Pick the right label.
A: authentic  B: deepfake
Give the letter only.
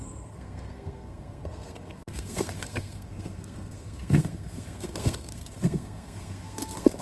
B